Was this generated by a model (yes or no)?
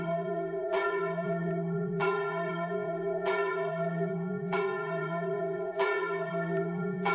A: yes